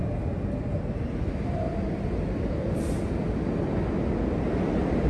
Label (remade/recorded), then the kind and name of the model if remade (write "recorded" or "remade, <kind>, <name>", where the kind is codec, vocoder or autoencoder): recorded